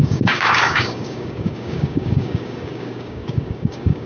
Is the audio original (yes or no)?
no